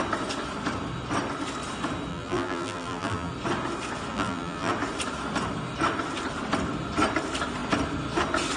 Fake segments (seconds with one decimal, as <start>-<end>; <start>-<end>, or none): 2.1-3.3; 4.1-4.7